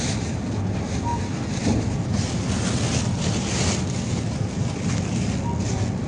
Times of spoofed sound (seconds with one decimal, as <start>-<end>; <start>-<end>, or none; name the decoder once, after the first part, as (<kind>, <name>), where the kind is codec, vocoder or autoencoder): none